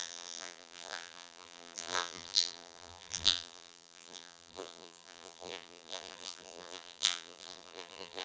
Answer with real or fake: fake